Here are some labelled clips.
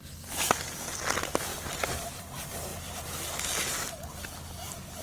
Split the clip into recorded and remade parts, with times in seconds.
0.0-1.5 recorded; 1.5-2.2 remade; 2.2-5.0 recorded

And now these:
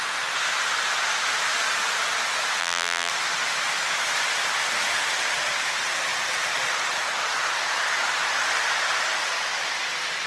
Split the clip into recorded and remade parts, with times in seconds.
0.0-2.6 recorded; 2.6-3.1 remade; 3.1-10.3 recorded

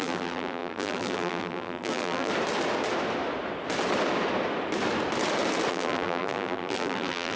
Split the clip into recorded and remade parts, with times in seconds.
0.0-2.3 remade; 2.3-5.7 recorded; 5.7-7.4 remade